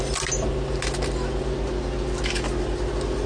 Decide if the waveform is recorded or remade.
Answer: recorded